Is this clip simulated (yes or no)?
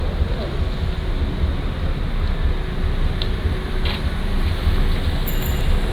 no